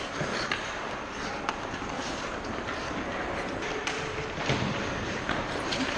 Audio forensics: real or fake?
fake